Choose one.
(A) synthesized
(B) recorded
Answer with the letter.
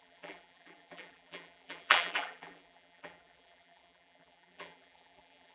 A